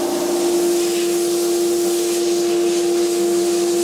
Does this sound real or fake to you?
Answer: real